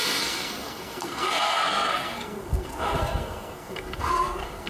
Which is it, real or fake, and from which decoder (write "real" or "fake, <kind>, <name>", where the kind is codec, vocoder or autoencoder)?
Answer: fake, codec, SNAC